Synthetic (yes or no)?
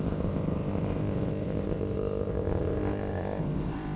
yes